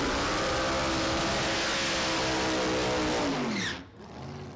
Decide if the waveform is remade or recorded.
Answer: recorded